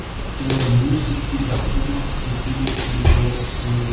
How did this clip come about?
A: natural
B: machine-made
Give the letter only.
A